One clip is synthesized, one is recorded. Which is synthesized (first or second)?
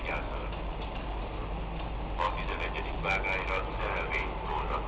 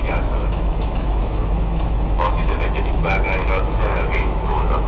second